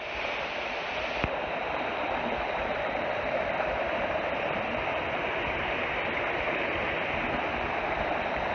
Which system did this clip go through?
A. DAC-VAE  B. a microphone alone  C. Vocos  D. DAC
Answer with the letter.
B